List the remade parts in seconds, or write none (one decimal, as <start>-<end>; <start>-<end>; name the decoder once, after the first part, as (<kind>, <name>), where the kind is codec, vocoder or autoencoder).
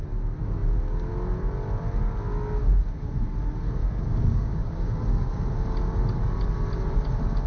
3.8-4.9 (codec, DAC)